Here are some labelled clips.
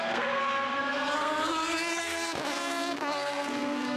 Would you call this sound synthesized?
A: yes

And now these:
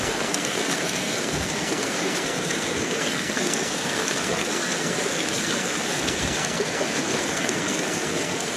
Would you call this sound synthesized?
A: yes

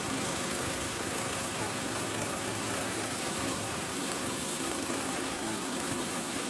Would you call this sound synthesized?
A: yes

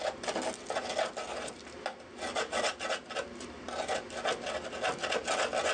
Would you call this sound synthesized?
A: no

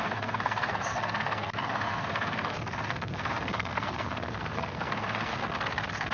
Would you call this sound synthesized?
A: yes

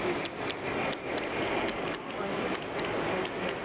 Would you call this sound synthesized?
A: no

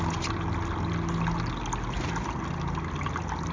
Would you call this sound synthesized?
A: no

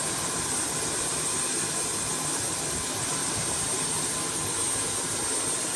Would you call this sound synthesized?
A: no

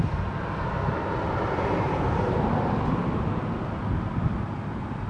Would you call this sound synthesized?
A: no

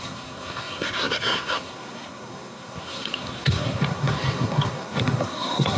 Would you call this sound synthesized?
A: yes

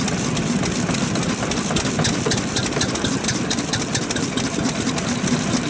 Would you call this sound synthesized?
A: no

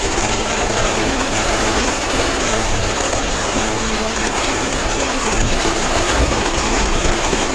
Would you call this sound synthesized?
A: yes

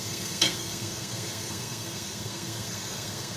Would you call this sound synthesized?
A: yes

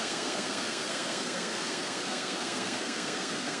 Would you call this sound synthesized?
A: yes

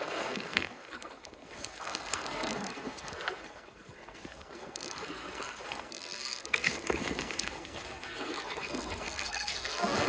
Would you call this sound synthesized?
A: yes